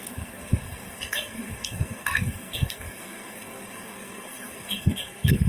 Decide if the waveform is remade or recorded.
remade